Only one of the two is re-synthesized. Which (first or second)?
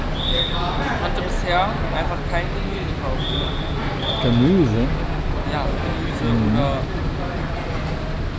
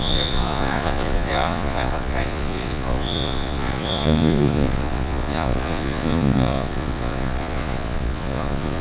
second